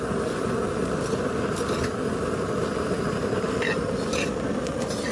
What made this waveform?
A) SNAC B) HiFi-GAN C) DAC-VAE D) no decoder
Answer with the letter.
D